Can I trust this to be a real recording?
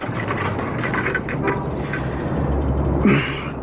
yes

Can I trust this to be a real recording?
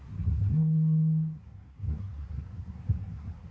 no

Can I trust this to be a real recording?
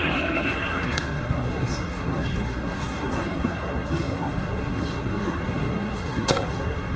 no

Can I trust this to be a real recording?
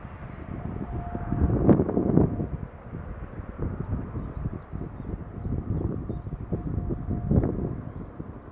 yes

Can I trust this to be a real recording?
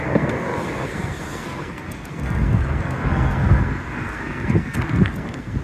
no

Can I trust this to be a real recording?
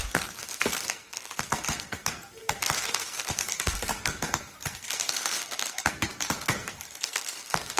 no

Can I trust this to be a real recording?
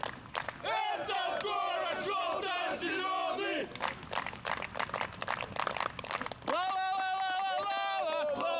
yes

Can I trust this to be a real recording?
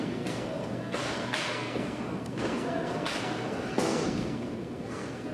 no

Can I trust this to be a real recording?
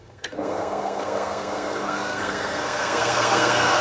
no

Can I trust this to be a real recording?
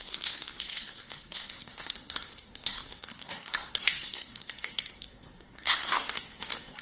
no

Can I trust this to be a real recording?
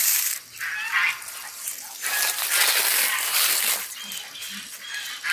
yes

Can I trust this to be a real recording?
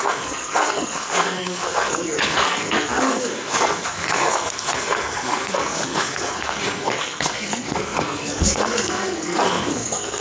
no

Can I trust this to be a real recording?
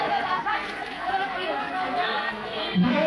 no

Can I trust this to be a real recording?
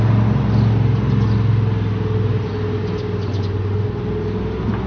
yes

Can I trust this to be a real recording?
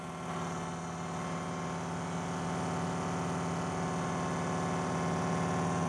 yes